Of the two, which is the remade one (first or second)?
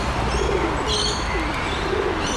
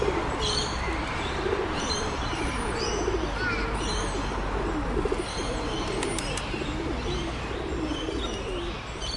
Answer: second